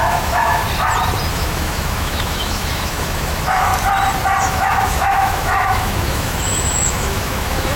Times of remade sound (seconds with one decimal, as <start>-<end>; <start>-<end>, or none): 0.0-0.6; 1.3-3.7; 4.4-7.8